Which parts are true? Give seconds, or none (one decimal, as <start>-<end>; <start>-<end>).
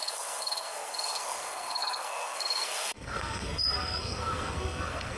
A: none